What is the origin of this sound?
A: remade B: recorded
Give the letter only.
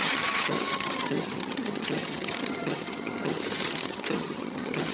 A